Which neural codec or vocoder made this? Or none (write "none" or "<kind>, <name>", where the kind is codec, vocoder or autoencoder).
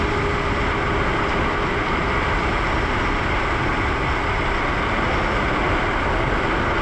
none